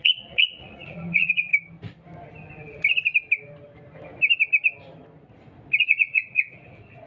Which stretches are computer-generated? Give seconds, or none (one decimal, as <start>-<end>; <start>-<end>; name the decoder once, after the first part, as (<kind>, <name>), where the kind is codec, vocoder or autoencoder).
0.0-1.5 (vocoder, Vocos); 5.8-7.1